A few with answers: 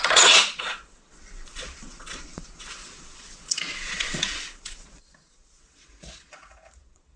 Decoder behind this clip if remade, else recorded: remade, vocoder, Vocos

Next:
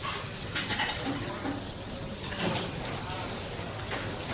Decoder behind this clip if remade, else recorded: recorded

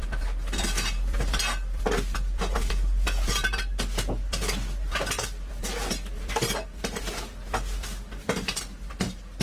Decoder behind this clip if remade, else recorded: recorded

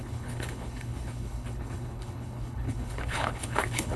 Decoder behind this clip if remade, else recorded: remade, codec, HILCodec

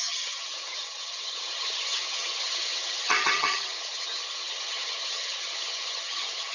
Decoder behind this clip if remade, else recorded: remade, vocoder, HiFi-GAN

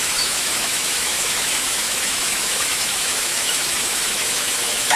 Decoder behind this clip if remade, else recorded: remade, autoencoder, DAC-VAE